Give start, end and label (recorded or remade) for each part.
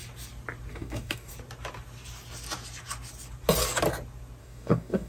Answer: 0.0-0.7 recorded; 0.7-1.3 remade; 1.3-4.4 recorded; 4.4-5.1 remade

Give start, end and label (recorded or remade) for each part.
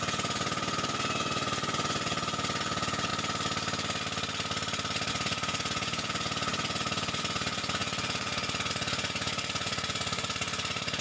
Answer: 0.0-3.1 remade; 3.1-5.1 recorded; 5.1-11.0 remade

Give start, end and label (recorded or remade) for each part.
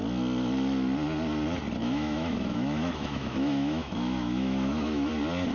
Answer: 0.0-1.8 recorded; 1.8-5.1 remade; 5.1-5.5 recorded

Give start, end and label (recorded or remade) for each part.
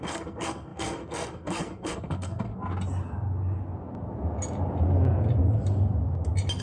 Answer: 0.0-2.5 remade; 2.5-6.6 recorded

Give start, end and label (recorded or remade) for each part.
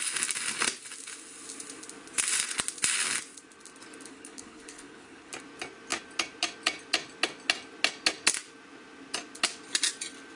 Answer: 0.0-4.1 recorded; 4.1-5.3 remade; 5.3-10.4 recorded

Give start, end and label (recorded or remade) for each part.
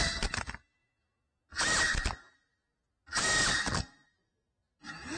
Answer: 0.0-5.2 recorded